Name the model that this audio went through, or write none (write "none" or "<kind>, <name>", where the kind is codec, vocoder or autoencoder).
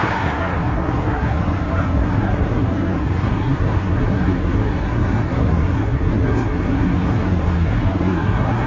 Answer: codec, SNAC